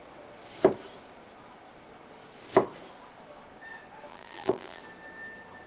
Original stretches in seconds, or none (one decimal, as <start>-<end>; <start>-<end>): 0.0-4.1; 4.8-5.7